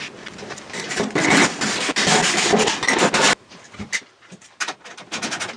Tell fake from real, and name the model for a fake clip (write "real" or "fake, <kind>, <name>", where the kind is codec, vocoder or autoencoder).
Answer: real